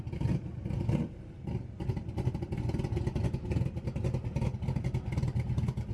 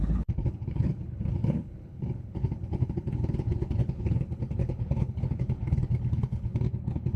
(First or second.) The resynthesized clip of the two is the second